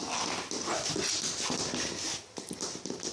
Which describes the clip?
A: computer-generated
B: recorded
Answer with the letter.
B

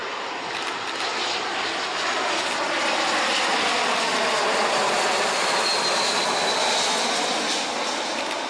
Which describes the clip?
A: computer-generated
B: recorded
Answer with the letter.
B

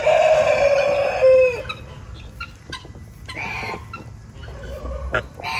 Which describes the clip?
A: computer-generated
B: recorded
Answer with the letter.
B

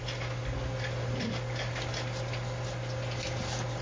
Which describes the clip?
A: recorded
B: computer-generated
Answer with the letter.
A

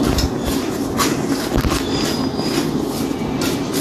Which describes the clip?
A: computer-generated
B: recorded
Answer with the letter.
B